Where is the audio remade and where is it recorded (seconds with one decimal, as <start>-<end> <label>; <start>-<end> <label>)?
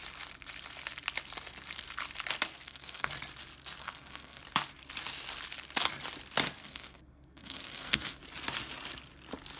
0.0-2.5 recorded; 2.5-3.1 remade; 3.1-3.8 recorded; 3.8-4.4 remade; 4.4-6.6 recorded; 6.6-8.2 remade; 8.2-9.6 recorded